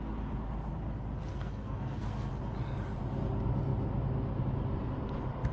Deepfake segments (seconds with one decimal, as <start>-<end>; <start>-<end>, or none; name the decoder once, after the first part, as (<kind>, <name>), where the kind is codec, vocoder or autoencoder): 1.3-2.3 (codec, SNAC)